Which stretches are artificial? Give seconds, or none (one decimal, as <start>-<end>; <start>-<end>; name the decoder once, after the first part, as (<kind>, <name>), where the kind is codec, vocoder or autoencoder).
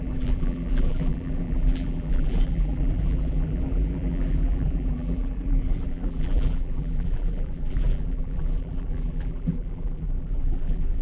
0.0-11.0 (vocoder, BigVGAN v2)